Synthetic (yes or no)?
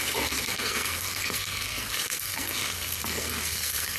yes